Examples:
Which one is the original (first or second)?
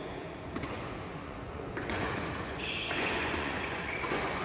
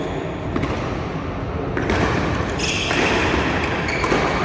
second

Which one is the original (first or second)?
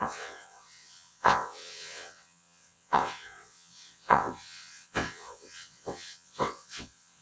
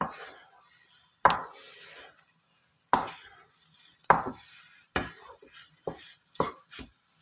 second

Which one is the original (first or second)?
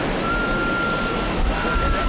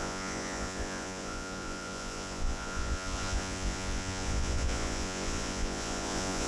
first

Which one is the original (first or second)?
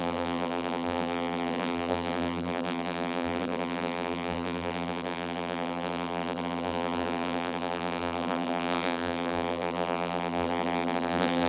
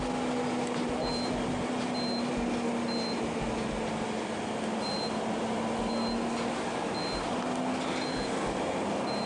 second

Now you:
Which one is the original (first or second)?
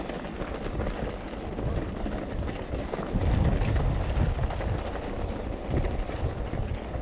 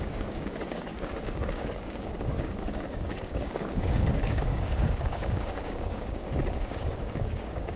first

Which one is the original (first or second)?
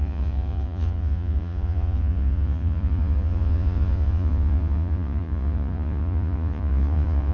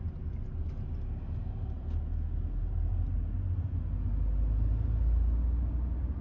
second